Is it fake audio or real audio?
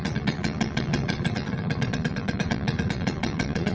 fake